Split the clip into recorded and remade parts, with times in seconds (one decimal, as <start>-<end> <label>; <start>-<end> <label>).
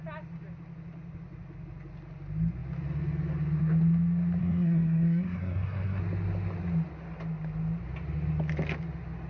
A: 0.0-4.4 recorded; 4.4-6.0 remade; 6.0-9.3 recorded